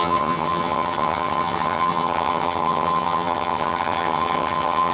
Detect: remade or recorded remade